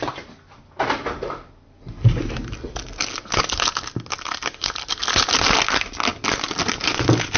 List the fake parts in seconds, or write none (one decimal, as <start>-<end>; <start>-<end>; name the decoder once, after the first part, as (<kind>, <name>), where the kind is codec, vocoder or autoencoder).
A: none